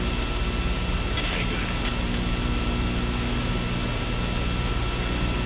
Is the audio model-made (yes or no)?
no